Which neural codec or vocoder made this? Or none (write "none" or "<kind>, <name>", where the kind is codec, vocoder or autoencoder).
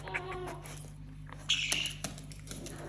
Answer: none